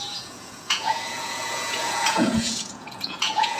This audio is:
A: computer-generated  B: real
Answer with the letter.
A